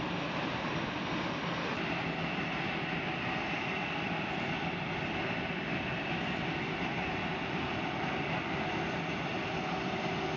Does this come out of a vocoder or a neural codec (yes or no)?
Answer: no